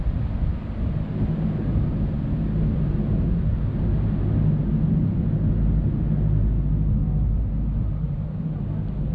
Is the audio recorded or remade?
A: recorded